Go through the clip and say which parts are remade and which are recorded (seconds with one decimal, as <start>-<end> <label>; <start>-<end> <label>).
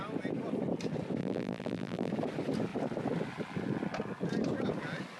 0.0-1.2 recorded; 1.2-2.1 remade; 2.1-5.2 recorded